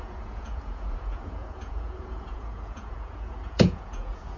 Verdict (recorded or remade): remade